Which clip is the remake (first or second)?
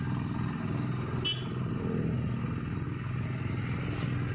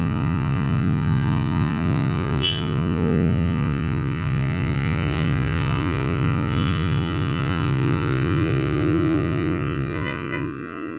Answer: second